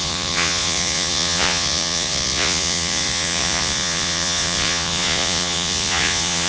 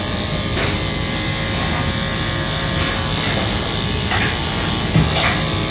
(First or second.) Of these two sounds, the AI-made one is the first